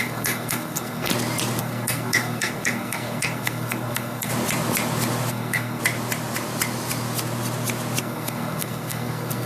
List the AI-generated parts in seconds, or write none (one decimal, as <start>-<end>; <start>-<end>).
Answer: 0.0-1.1; 1.6-4.3; 5.3-5.8; 8.0-9.5